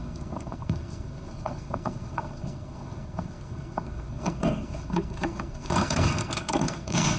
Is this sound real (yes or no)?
no